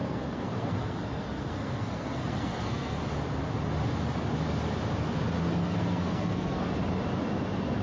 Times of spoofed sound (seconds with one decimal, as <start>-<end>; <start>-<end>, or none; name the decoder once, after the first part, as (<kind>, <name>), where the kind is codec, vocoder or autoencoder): 0.0-3.0 (codec, SNAC); 5.6-6.7